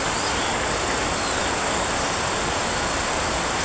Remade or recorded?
recorded